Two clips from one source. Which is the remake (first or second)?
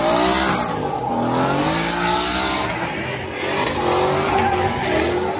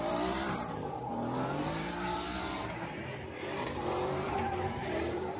second